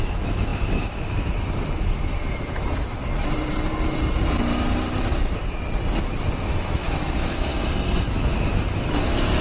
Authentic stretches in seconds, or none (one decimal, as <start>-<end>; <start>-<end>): 3.0-6.4; 7.5-8.1